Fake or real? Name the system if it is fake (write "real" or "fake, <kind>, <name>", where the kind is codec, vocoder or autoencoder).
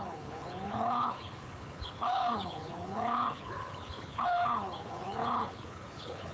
fake, codec, HILCodec